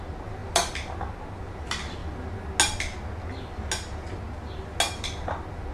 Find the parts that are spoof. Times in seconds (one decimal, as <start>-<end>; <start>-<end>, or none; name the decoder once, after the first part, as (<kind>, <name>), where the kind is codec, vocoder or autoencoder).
none